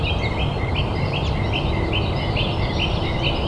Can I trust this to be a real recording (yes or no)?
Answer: yes